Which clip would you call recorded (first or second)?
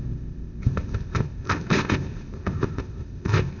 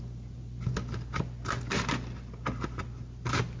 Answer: second